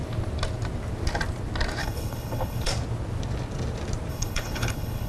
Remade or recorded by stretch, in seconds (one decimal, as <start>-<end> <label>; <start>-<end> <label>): 0.0-1.8 recorded; 1.8-2.7 remade; 2.7-4.1 recorded; 4.1-5.1 remade